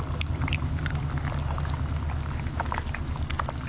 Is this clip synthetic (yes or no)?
no